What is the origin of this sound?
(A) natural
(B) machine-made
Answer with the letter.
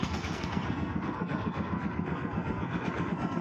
B